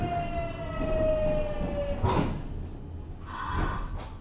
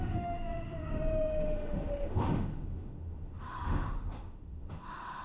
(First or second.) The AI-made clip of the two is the second